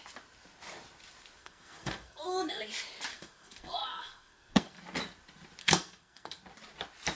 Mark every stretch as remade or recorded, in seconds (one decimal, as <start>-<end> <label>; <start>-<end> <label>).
0.0-1.4 recorded; 1.4-2.6 remade; 2.6-3.1 recorded; 3.1-4.8 remade; 4.8-5.6 recorded; 5.6-6.4 remade; 6.4-7.1 recorded